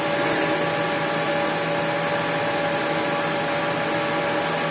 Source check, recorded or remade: recorded